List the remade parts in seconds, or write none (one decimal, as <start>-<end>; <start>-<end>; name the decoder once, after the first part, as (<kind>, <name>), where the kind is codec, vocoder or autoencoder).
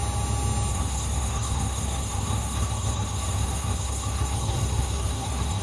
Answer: 0.7-5.6 (codec, SNAC)